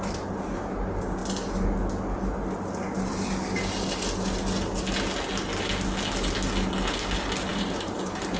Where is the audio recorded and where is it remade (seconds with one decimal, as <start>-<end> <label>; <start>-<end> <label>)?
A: 0.0-7.5 recorded; 7.5-8.4 remade